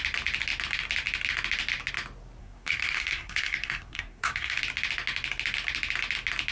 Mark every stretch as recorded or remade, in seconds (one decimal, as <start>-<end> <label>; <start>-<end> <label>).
0.0-2.4 recorded; 2.4-4.6 remade; 4.6-6.5 recorded